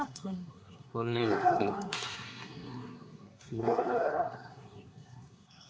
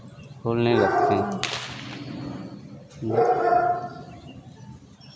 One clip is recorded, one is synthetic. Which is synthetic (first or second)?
first